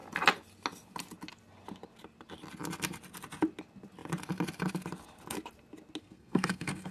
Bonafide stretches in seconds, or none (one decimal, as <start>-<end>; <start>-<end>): 0.0-6.0